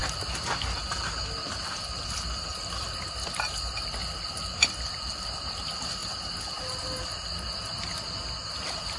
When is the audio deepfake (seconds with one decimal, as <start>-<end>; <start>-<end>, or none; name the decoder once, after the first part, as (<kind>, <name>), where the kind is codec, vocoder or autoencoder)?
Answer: 0.0-3.0 (vocoder, BigVGAN v2); 4.0-5.3